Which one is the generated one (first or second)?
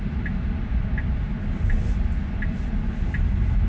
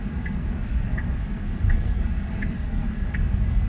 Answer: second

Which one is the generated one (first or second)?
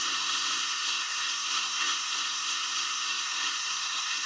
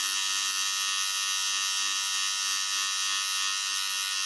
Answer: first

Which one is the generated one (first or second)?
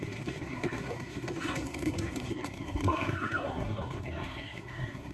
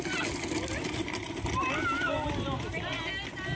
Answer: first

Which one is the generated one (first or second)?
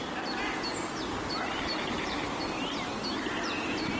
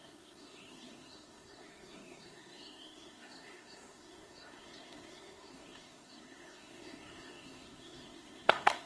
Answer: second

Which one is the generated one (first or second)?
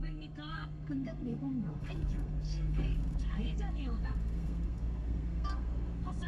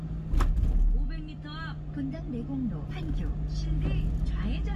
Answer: first